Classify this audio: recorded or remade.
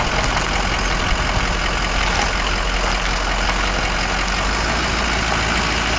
recorded